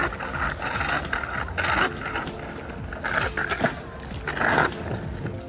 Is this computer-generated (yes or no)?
no